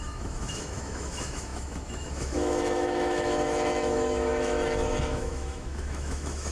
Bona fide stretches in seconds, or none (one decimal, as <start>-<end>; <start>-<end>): none